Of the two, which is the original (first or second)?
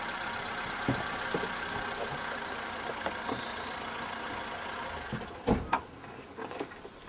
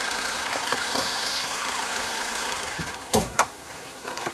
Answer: first